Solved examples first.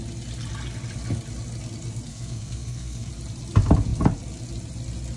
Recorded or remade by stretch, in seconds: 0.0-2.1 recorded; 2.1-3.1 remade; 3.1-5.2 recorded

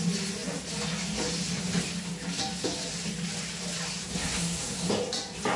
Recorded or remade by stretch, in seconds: 0.0-4.2 recorded; 4.2-4.9 remade; 4.9-5.6 recorded